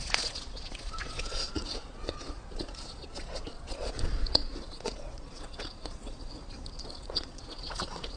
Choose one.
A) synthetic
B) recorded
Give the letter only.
A